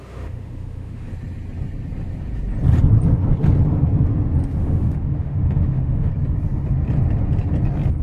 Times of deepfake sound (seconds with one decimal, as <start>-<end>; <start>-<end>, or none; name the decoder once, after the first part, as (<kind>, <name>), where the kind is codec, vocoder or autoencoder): 0.0-1.1 (autoencoder, DAC-VAE); 4.6-6.1